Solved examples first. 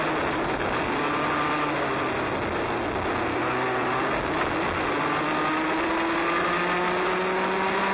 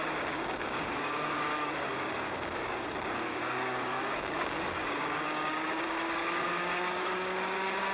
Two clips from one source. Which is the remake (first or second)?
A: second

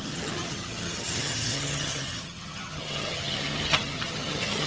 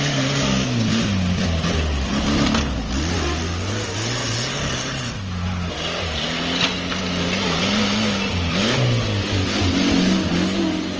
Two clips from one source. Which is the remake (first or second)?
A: first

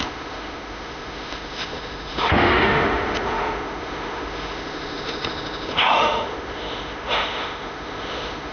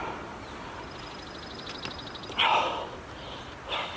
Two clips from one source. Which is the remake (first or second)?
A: first